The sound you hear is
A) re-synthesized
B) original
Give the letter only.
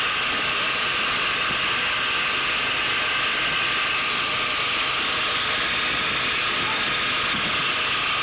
B